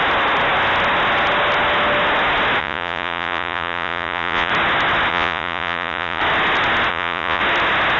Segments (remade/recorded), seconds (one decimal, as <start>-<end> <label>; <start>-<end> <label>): 0.0-2.6 recorded; 2.6-4.5 remade; 4.5-5.1 recorded; 5.1-6.2 remade; 6.2-6.9 recorded; 6.9-7.4 remade; 7.4-8.0 recorded

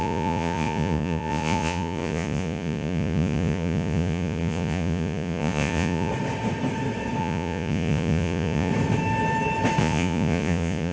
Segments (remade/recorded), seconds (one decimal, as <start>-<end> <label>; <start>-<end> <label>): 0.0-6.1 remade; 6.1-7.2 recorded; 7.2-8.7 remade; 8.7-9.8 recorded; 9.8-10.9 remade